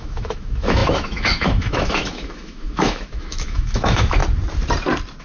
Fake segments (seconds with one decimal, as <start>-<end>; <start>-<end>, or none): 0.0-4.2